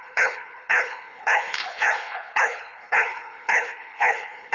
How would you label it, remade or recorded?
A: remade